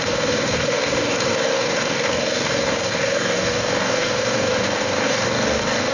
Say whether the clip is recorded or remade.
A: remade